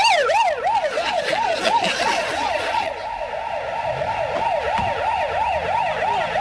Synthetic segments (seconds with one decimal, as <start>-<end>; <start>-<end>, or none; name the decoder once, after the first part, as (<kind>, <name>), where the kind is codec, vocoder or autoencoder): 0.9-2.9 (vocoder, Vocos)